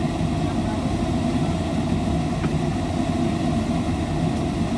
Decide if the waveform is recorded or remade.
recorded